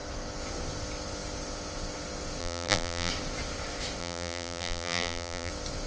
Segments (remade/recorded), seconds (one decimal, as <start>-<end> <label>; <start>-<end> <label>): 0.0-2.4 recorded; 2.4-3.1 remade; 3.1-4.0 recorded; 4.0-5.5 remade; 5.5-5.9 recorded